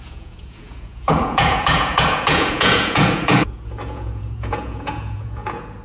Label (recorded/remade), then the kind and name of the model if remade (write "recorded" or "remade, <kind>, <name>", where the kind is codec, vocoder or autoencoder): remade, vocoder, Vocos